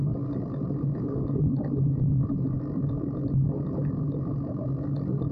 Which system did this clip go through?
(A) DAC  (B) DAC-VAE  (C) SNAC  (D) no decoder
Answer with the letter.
D